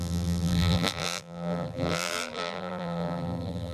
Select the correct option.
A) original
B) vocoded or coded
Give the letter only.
B